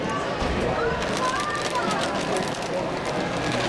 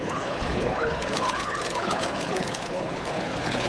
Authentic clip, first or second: first